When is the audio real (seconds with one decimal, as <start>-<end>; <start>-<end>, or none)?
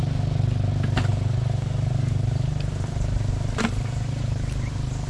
0.0-1.1; 4.2-5.1